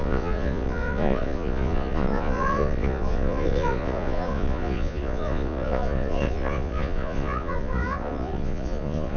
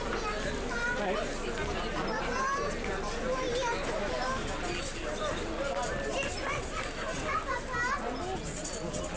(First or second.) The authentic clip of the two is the second